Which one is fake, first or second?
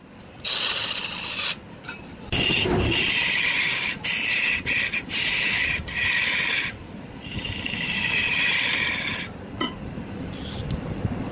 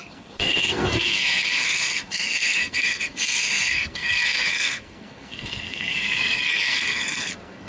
second